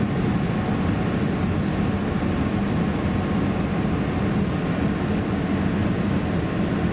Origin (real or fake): real